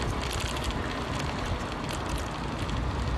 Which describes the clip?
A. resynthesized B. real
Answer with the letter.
B